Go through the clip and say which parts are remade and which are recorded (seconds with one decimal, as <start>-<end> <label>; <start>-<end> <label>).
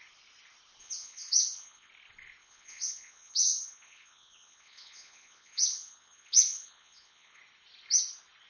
0.0-0.8 recorded; 0.8-1.9 remade; 1.9-2.4 recorded; 2.4-7.4 remade; 7.4-8.5 recorded